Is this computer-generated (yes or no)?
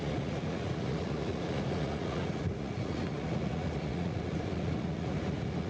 yes